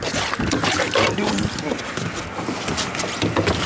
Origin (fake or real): real